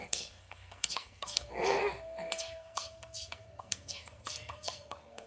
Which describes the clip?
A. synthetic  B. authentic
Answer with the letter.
A